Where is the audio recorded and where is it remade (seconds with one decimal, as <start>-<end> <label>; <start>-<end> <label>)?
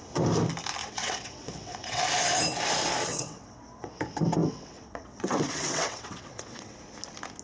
0.0-0.8 recorded; 0.8-2.0 remade; 2.0-3.1 recorded; 3.1-4.0 remade; 4.0-4.4 recorded; 4.4-6.8 remade; 6.8-7.4 recorded